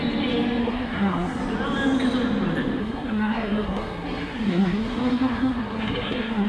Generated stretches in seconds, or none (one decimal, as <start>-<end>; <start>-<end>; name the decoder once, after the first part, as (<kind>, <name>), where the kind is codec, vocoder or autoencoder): 0.6-1.4 (codec, SNAC); 2.8-6.5